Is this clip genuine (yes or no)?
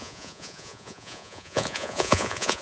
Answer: no